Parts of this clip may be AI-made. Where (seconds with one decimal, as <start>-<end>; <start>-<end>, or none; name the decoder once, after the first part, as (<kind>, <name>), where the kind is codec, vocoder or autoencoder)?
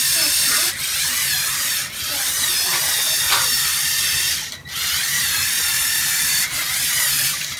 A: none